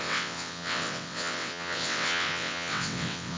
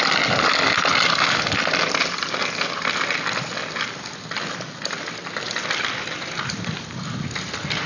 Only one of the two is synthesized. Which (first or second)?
first